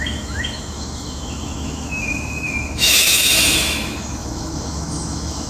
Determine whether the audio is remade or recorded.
remade